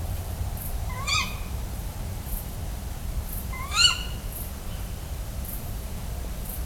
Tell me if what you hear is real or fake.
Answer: fake